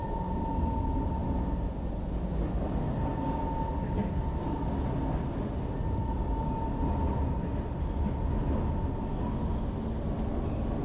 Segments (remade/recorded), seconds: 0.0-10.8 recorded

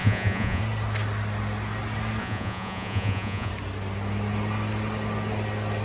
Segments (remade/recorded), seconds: 0.0-0.6 remade; 0.6-2.2 recorded; 2.2-3.5 remade; 3.5-5.8 recorded

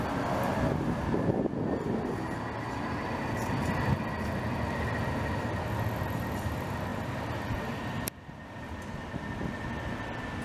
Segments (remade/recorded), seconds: 0.0-10.4 recorded